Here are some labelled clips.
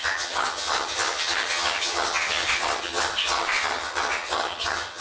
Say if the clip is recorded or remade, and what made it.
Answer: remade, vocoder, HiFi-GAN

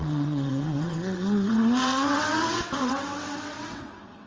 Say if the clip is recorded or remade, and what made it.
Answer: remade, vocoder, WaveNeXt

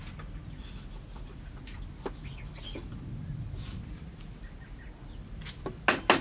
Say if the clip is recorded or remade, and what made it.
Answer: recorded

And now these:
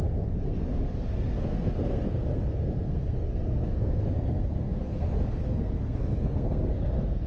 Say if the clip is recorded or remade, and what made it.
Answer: remade, codec, SNAC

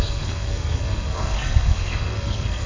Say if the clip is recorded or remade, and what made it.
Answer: remade, codec, SNAC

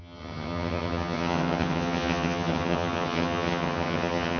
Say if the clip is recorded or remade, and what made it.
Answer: remade, vocoder, HiFi-GAN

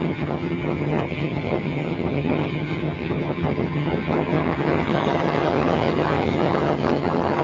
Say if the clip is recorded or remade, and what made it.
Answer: remade, vocoder, HiFi-GAN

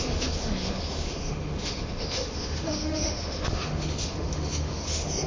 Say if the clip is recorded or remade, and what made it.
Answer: remade, autoencoder, DAC-VAE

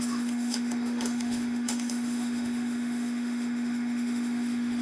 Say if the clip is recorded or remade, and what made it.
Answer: remade, autoencoder, DAC-VAE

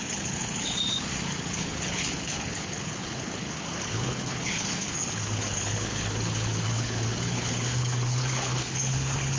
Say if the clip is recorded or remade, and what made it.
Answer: remade, codec, HILCodec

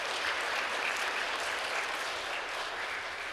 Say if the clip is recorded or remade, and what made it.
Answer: recorded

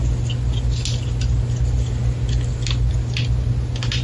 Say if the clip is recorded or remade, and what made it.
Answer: recorded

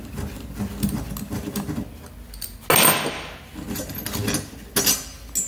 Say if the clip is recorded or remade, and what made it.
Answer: recorded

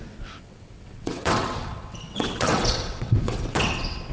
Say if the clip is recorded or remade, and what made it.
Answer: remade, vocoder, WaveNeXt